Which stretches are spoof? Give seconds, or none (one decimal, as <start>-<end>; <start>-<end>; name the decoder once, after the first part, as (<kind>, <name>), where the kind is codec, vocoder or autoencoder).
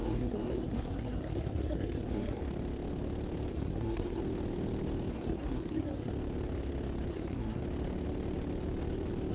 0.0-2.4 (codec, SNAC); 3.5-4.2; 5.1-6.1; 7.1-7.6